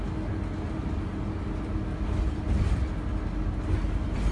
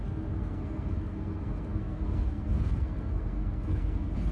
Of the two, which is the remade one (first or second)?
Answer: second